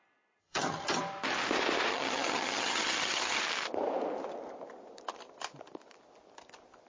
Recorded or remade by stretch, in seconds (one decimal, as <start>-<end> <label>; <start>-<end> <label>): 0.0-0.4 recorded; 0.4-1.0 remade; 1.0-1.9 recorded; 1.9-3.4 remade; 3.4-6.9 recorded